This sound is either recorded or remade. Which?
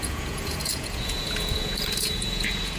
remade